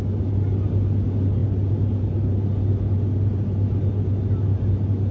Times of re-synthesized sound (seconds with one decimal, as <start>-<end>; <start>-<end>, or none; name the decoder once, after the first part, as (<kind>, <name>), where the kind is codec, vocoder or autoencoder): none